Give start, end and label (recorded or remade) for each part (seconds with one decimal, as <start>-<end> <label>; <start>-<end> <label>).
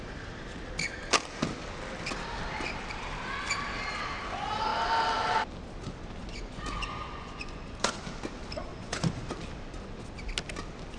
0.0-6.2 recorded; 6.2-8.0 remade; 8.0-8.7 recorded; 8.7-9.3 remade; 9.3-11.0 recorded